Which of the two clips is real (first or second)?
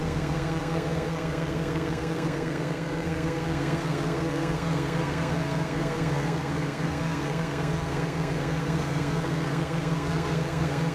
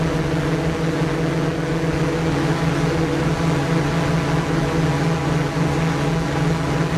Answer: second